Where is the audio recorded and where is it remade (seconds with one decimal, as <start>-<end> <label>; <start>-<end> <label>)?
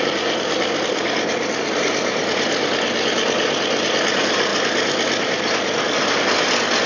0.0-6.9 recorded